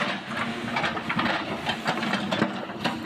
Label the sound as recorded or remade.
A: recorded